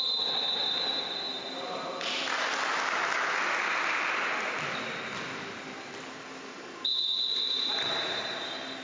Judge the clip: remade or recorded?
recorded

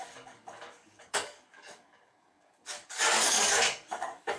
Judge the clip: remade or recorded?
remade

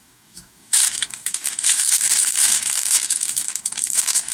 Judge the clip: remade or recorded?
remade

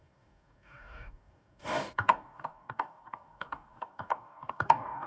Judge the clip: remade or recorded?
remade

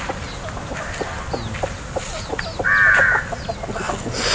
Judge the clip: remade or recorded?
recorded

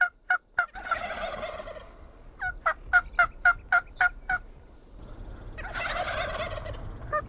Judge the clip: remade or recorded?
recorded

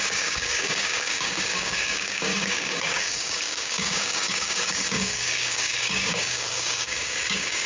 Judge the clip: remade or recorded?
remade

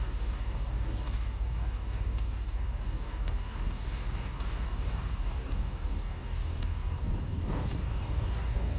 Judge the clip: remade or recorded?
remade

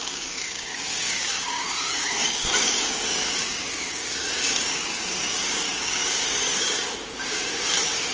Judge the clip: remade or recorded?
remade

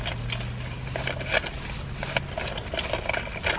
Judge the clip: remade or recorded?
recorded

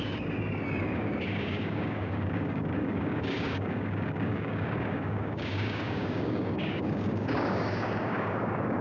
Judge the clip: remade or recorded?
remade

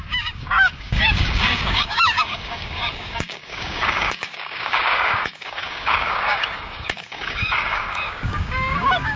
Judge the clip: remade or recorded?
remade